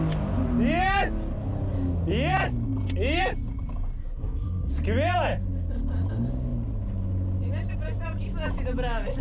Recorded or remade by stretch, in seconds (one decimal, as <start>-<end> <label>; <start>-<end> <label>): 0.0-4.0 recorded; 4.0-4.7 remade; 4.7-9.2 recorded

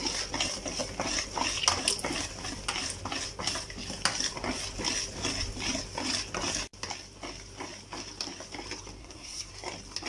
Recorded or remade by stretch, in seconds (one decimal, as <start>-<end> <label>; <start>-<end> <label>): 0.0-9.0 recorded; 9.0-9.5 remade; 9.5-10.1 recorded

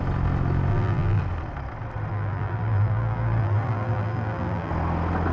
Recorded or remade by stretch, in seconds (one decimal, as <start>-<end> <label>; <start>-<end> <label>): 0.0-0.7 recorded; 0.7-1.2 remade; 1.2-2.1 recorded; 2.1-4.7 remade; 4.7-5.3 recorded

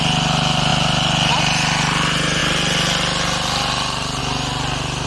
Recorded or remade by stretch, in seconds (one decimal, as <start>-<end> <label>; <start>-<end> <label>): 0.0-5.1 recorded